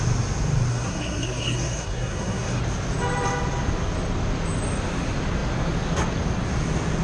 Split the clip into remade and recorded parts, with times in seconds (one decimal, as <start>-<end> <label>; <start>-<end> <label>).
0.0-0.7 recorded; 0.7-2.6 remade; 2.6-7.0 recorded